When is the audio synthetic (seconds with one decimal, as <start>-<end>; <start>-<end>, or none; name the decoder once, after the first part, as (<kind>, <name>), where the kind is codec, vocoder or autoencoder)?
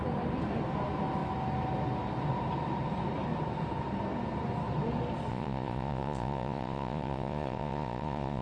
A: 5.3-8.4 (vocoder, Vocos)